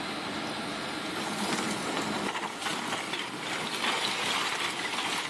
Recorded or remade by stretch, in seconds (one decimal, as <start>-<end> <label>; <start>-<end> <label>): 0.0-5.3 recorded